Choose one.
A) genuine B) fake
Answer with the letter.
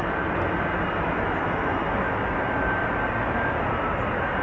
A